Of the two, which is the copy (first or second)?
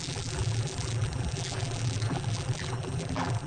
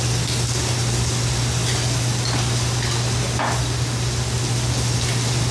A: first